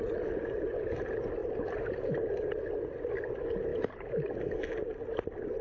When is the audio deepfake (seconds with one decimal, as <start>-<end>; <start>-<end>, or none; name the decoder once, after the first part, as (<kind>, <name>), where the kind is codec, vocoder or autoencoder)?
none